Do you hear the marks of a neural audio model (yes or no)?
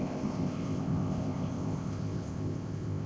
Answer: yes